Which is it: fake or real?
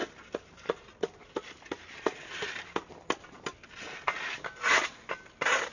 real